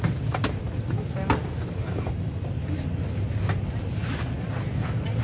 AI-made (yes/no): no